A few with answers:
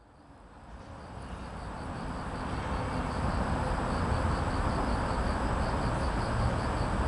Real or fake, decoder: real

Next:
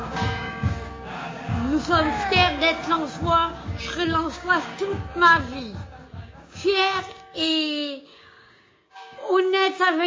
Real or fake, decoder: fake, codec, DAC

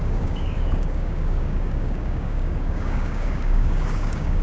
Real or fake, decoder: fake, codec, DAC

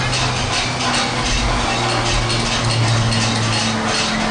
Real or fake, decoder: real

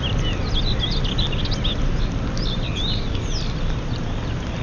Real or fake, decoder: real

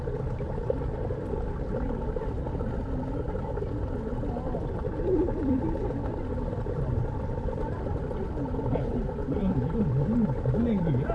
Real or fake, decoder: real